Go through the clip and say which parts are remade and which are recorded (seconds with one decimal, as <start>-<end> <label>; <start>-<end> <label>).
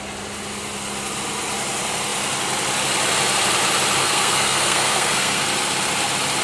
0.0-4.0 recorded; 4.0-5.4 remade; 5.4-6.4 recorded